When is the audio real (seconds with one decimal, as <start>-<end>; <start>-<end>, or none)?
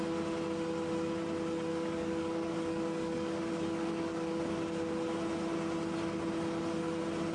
0.0-1.7; 4.4-7.3